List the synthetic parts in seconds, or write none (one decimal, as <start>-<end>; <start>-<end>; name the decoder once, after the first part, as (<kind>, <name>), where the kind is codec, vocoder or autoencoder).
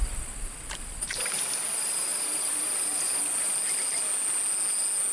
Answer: none